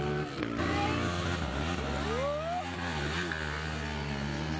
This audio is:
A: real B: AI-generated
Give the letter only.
A